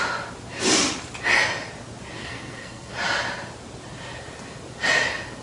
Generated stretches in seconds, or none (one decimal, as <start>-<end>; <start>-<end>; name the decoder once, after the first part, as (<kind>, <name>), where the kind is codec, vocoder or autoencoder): 2.2-2.9 (codec, SNAC)